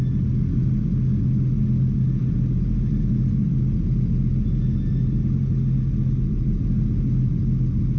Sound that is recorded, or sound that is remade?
recorded